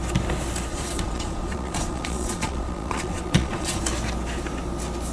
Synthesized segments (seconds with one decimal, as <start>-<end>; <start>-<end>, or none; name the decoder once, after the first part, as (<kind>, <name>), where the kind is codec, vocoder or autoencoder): 0.7-3.8 (vocoder, Vocos)